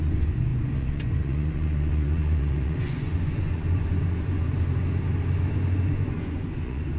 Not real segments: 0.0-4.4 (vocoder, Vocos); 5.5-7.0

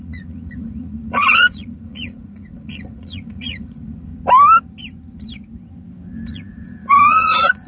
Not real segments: 0.0-4.1 (vocoder, Vocos); 6.3-7.7

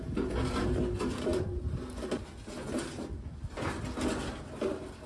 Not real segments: none

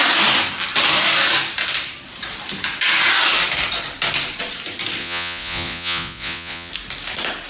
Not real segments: 5.0-6.7 (vocoder, Vocos)